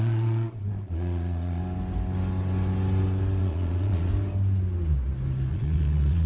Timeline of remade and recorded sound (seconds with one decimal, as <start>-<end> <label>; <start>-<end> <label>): 0.0-1.6 remade; 1.6-3.4 recorded; 3.4-4.1 remade; 4.1-5.5 recorded; 5.5-6.3 remade